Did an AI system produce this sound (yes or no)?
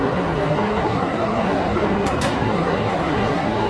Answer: yes